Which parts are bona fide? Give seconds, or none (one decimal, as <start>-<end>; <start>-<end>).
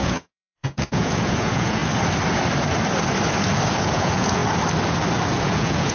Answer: 1.8-3.8; 4.4-5.4